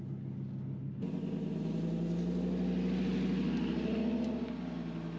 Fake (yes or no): no